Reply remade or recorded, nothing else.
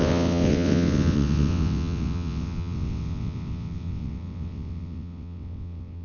remade